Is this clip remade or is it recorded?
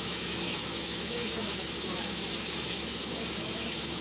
remade